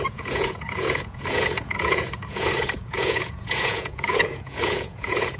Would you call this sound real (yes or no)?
no